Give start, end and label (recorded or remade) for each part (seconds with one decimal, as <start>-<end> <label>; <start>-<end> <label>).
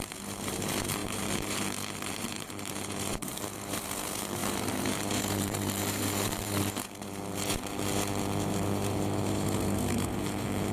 0.0-10.7 remade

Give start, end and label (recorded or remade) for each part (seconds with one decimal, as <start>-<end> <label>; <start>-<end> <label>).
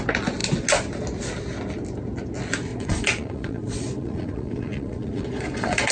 0.0-2.7 recorded; 2.7-5.9 remade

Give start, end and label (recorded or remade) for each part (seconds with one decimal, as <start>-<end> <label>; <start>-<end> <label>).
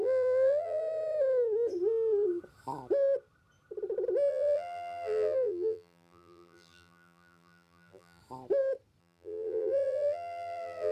0.0-0.8 remade; 0.8-4.3 recorded; 4.3-8.2 remade; 8.2-9.0 recorded; 9.0-10.9 remade